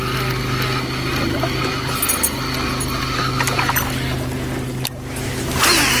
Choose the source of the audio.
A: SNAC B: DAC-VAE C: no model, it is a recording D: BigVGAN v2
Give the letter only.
C